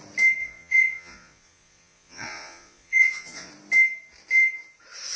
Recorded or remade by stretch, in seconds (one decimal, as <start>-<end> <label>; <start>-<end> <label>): 0.0-0.4 recorded; 0.4-3.5 remade; 3.5-5.2 recorded